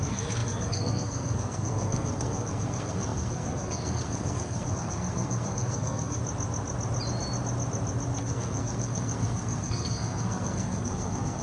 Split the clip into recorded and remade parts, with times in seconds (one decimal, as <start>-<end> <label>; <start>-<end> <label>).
0.0-6.2 remade; 6.2-8.2 recorded; 8.2-11.4 remade